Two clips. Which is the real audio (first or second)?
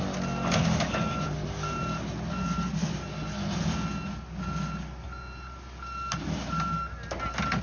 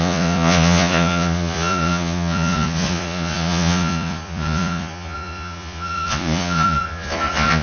first